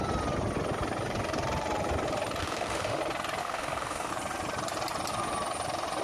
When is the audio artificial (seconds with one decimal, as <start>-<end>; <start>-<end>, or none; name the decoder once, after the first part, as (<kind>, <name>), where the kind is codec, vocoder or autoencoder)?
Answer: 2.4-3.0 (autoencoder, DAC-VAE); 3.4-4.1

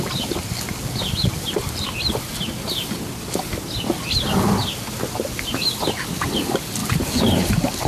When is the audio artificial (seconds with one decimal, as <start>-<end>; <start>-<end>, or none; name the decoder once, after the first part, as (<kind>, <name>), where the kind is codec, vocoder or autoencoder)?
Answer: none

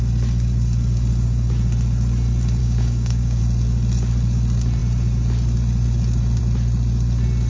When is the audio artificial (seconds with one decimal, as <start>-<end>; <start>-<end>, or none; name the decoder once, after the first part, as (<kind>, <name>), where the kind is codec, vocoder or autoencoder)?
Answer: 2.6-3.4 (codec, DAC)

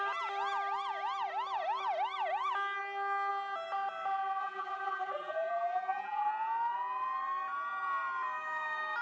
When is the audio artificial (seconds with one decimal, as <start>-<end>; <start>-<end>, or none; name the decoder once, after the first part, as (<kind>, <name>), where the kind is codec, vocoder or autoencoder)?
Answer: 4.4-6.3 (vocoder, BigVGAN v2)

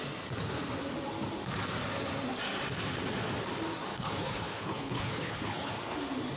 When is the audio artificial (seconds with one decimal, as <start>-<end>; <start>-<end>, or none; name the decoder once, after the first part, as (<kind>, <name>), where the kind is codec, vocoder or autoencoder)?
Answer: 3.9-5.7 (codec, HILCodec)

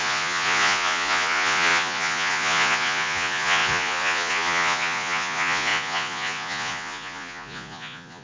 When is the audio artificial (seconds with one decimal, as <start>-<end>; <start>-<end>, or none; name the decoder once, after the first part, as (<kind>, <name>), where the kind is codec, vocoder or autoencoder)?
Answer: 0.0-8.2 (vocoder, Vocos)

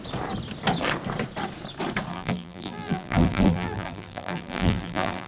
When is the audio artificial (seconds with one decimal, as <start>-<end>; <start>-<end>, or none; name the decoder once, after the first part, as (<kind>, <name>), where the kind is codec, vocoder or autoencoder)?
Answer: 2.1-5.3 (vocoder, BigVGAN v2)

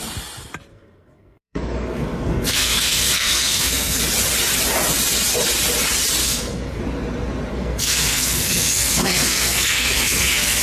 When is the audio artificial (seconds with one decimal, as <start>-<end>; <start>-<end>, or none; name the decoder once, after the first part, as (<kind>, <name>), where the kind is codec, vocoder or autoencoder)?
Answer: 0.7-4.0 (codec, SNAC); 6.2-6.8; 7.5-10.6